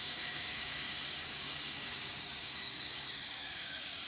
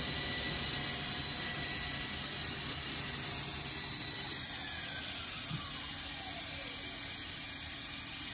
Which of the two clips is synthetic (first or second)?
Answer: first